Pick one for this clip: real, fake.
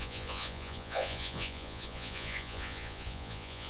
fake